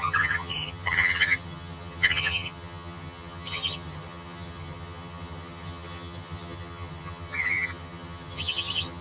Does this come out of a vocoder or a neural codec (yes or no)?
yes